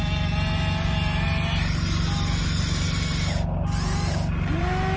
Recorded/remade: recorded